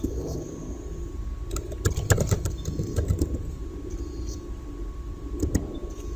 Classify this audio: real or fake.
fake